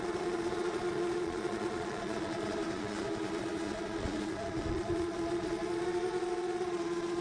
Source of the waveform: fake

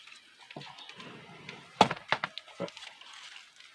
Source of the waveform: real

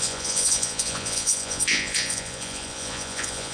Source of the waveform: fake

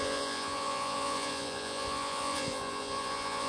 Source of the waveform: fake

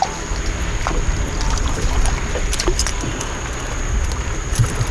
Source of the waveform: real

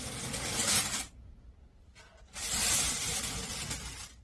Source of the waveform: real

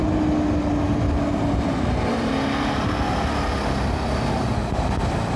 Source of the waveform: real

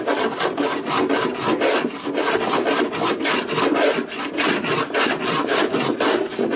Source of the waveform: real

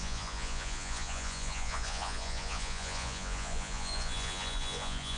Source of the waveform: fake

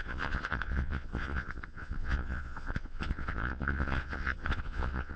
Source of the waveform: fake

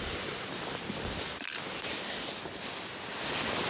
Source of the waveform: real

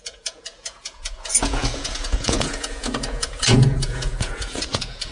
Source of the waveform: fake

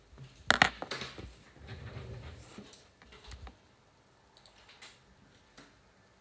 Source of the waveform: real